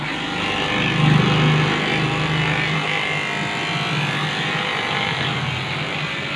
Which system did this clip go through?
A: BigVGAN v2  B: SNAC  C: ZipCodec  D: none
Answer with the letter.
D